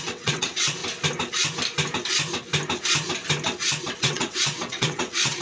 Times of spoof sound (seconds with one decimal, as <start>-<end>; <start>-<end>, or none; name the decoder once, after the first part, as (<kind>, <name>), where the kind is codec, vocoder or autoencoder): 0.0-0.8 (vocoder, WaveNeXt); 4.0-5.4